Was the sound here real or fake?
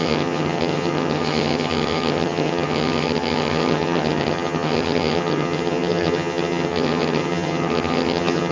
fake